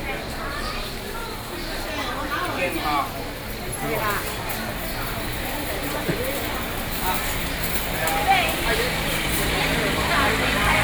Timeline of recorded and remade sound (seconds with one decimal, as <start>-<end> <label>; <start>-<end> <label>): 0.0-8.2 recorded; 8.2-10.1 remade; 10.1-10.8 recorded